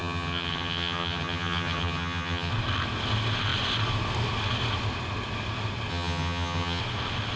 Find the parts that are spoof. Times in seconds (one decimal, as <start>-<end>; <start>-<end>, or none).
0.0-2.5; 5.9-6.8